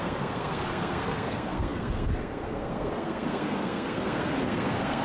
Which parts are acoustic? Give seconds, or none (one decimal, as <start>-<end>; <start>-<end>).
none